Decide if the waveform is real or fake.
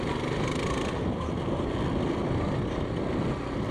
real